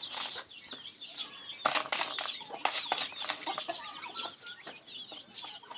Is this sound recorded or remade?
recorded